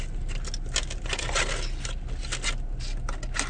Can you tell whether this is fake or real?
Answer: real